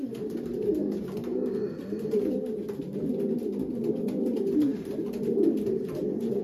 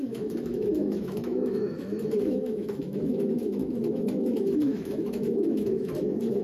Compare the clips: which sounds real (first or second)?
first